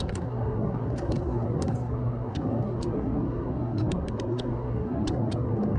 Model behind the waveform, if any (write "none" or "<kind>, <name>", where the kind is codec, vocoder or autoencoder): codec, SNAC